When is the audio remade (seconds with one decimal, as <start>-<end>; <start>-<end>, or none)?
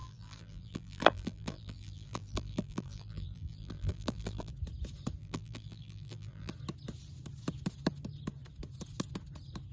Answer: 0.0-4.5; 5.2-6.5